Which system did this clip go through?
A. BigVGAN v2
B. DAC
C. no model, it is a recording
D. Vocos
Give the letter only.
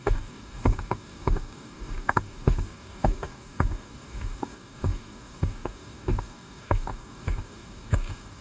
B